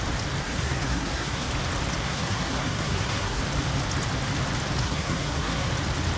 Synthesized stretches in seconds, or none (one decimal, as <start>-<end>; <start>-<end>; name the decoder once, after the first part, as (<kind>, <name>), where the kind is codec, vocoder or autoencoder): 0.4-1.5 (codec, SNAC); 2.0-3.4; 4.8-5.7